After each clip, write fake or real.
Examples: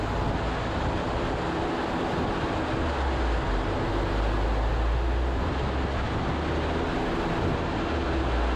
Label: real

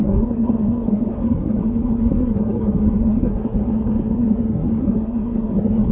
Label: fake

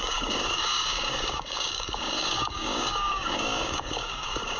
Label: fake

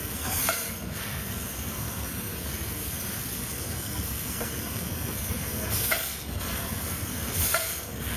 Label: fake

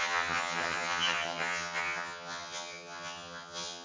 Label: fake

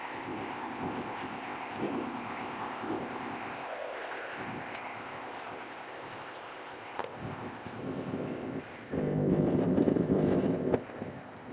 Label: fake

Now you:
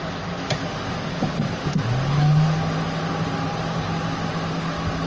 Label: real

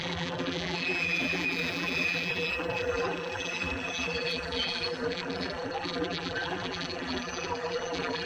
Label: fake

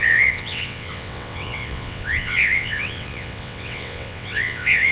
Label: fake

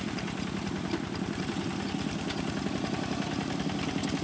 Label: real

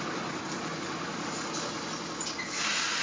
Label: real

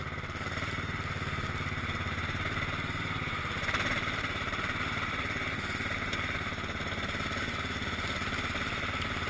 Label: fake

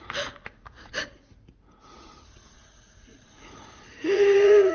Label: fake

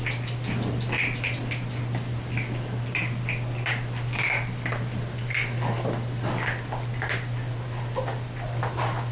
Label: real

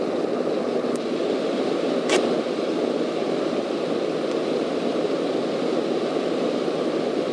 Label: fake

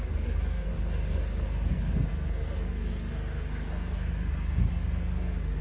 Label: fake